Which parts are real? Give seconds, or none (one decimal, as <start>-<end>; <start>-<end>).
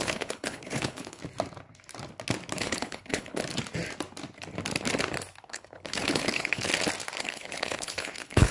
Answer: 1.2-2.6; 3.4-5.5; 6.7-7.2